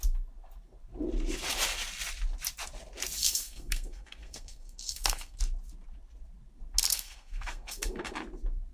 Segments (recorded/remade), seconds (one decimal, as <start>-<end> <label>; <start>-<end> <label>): 0.0-3.2 recorded; 3.2-5.4 remade; 5.4-6.9 recorded; 6.9-8.1 remade; 8.1-8.7 recorded